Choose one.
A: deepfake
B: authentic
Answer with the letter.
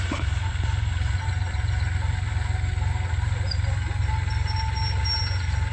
B